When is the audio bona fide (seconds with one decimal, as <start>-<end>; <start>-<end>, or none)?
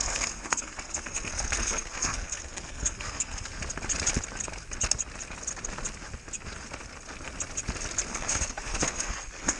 3.5-8.1